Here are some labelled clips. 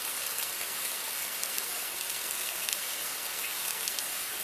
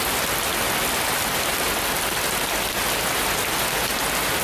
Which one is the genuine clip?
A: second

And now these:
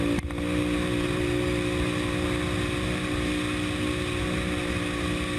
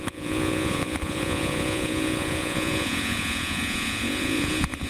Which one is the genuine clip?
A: first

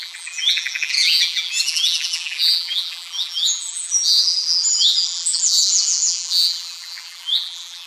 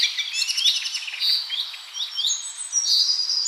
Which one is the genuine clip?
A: second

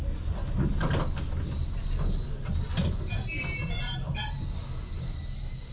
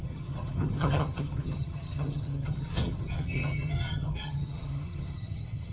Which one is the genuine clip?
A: first